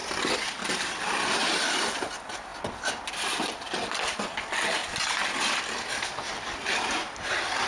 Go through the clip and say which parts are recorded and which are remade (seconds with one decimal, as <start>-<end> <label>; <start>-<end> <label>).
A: 0.0-7.7 recorded